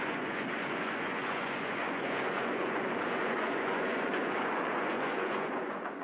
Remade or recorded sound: remade